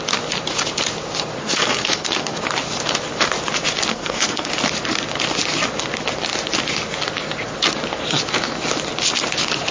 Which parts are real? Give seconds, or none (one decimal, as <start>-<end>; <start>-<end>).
0.0-1.4; 2.4-3.9; 4.5-9.7